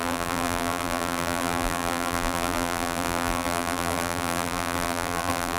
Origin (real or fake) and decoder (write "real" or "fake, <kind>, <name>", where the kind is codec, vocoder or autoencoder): fake, vocoder, BigVGAN v2